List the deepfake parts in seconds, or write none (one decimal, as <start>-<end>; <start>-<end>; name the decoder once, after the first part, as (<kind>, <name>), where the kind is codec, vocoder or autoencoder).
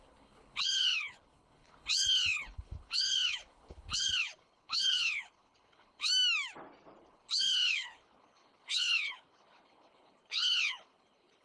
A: 0.0-6.1 (codec, HILCodec); 7.0-11.4